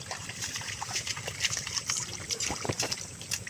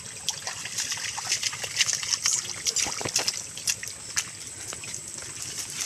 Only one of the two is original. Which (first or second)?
second